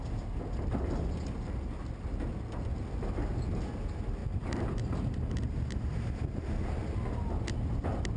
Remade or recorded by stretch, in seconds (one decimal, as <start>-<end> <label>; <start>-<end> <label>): 0.0-4.2 recorded; 4.2-6.2 remade; 6.2-8.2 recorded